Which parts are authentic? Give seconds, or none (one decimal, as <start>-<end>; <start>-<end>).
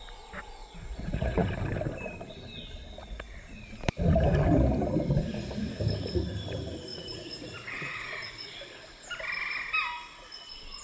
0.0-0.6; 1.5-3.0; 3.6-6.9; 8.3-10.8